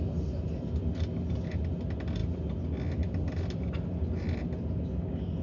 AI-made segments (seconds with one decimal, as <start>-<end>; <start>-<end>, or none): none